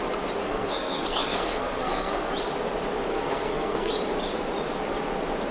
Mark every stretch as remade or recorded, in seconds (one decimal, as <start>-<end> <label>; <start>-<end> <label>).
0.0-0.4 recorded; 0.4-2.3 remade; 2.3-3.1 recorded; 3.1-3.9 remade; 3.9-5.5 recorded